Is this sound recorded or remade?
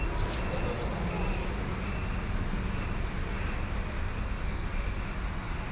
recorded